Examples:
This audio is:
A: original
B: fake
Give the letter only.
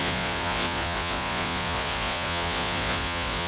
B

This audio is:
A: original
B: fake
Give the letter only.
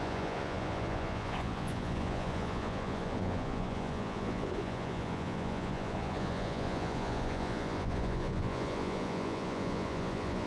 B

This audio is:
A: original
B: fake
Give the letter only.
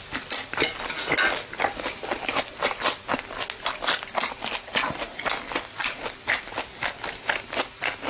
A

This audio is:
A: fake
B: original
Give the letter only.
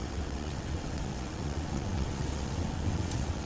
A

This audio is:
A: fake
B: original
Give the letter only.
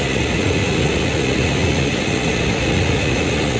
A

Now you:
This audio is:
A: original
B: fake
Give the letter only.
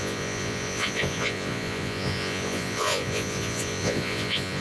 B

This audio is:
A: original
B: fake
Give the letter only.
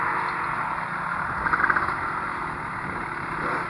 A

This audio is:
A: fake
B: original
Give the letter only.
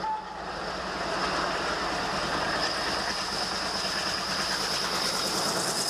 B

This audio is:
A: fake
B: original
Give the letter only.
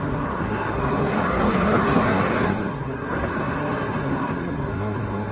A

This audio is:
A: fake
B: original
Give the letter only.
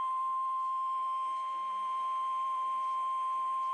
A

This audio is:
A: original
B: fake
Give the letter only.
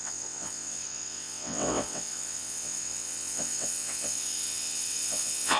B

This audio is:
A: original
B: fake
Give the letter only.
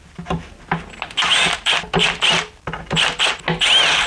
A